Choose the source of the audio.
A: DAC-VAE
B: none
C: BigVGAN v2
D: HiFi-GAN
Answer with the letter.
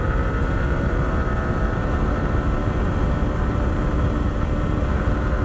C